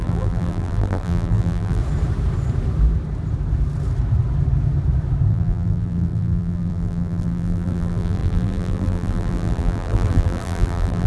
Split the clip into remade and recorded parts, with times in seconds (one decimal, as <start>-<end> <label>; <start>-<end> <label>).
0.0-1.8 remade; 1.8-5.3 recorded; 5.3-11.1 remade